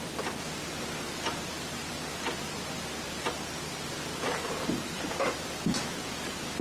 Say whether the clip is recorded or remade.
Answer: recorded